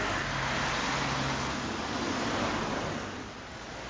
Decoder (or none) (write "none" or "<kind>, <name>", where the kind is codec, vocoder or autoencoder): none